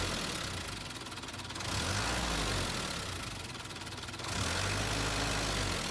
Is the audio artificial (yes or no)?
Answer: no